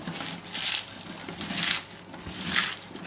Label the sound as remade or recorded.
recorded